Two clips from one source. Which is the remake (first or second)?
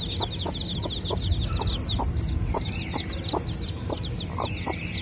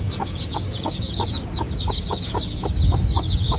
second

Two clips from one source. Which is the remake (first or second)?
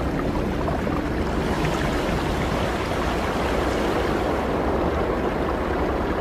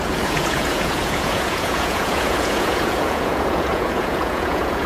second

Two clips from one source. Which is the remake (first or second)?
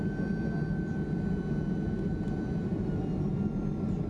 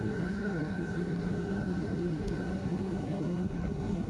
second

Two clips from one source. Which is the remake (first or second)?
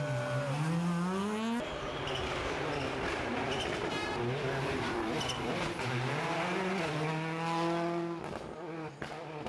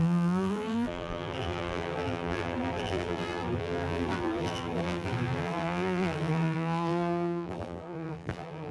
second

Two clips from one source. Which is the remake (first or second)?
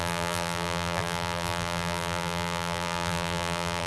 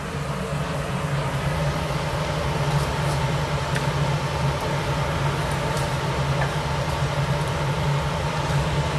first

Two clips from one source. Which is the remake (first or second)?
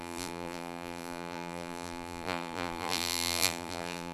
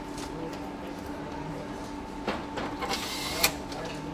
first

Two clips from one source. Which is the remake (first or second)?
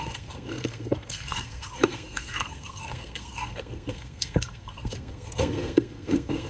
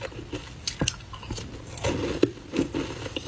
first